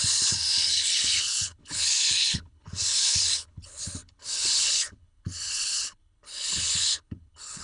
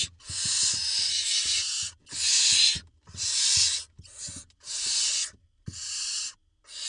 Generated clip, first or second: first